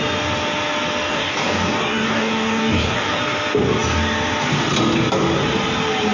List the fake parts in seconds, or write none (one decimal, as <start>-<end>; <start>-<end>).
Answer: 1.1-3.2

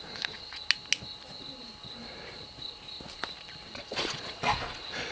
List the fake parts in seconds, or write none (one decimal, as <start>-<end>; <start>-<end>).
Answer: 0.0-0.6; 3.7-5.1

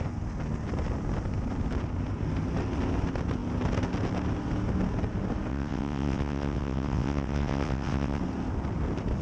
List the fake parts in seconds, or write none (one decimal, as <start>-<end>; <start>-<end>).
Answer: 5.5-8.2

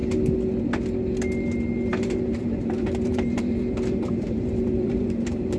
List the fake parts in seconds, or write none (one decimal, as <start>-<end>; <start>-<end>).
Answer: 1.9-5.6

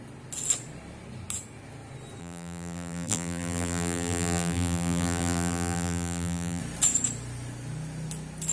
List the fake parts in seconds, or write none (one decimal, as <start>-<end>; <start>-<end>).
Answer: 2.2-6.6

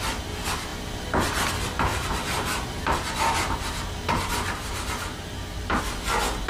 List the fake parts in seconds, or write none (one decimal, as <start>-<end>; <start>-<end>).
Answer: 1.9-5.8

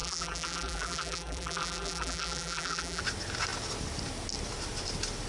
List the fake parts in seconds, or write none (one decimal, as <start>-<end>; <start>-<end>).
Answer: 0.0-3.0

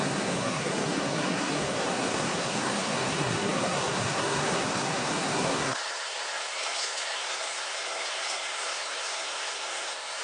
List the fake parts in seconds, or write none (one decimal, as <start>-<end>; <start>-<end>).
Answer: 0.0-10.2